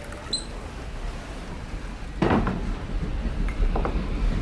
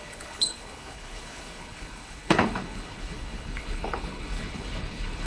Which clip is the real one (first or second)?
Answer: first